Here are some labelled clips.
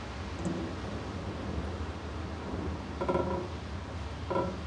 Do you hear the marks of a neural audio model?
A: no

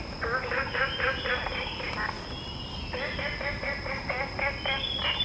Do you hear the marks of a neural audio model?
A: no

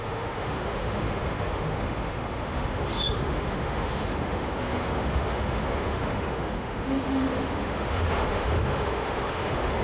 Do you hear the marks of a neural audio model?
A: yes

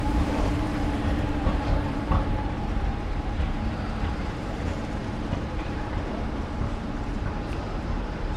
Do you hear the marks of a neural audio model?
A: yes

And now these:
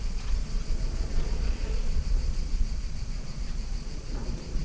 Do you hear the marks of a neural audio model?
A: yes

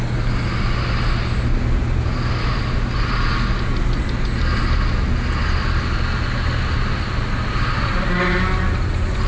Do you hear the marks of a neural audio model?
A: no